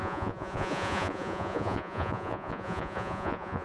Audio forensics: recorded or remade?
remade